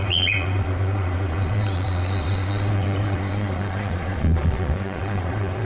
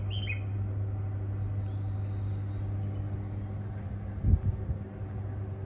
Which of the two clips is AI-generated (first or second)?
first